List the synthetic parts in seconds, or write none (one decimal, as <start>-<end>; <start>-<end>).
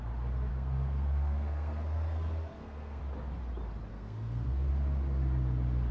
0.5-3.0; 3.9-4.7